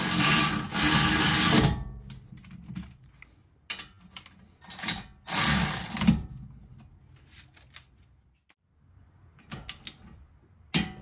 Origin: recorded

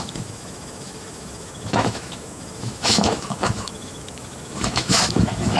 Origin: remade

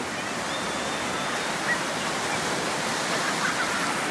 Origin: recorded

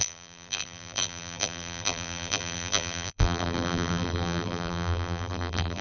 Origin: remade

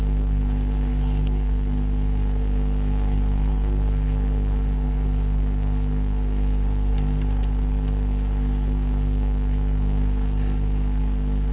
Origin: remade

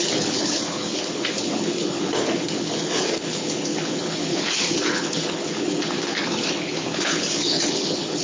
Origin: remade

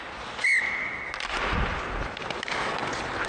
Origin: recorded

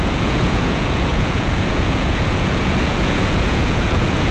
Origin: remade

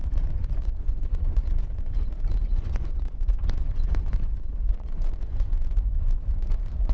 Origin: remade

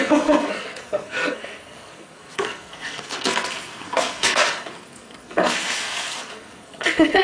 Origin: remade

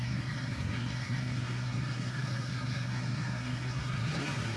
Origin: remade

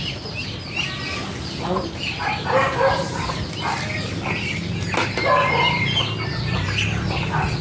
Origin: recorded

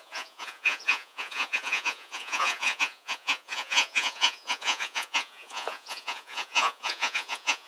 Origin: remade